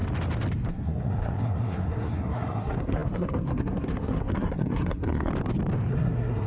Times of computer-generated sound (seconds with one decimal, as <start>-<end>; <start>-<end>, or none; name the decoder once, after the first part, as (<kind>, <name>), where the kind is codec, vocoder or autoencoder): 0.7-5.3 (codec, SNAC); 5.9-6.5